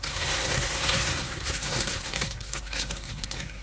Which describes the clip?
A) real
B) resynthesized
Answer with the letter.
B